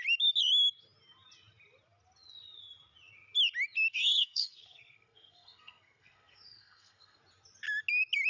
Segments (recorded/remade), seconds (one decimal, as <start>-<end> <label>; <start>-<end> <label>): 0.0-3.9 recorded; 3.9-7.2 remade; 7.2-8.3 recorded